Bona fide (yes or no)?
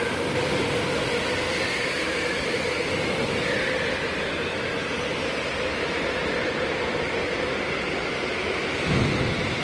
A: yes